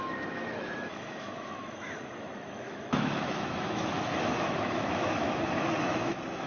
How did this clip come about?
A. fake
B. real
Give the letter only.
A